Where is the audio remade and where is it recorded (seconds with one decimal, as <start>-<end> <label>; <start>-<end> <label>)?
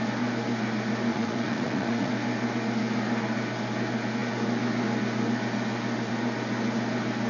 0.0-1.1 recorded; 1.1-2.1 remade; 2.1-7.3 recorded